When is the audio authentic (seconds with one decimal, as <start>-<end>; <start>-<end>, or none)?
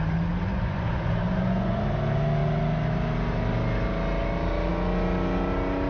0.0-0.5; 1.8-5.9